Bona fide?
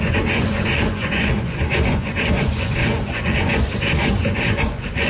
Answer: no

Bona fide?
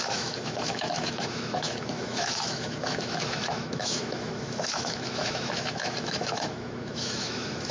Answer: no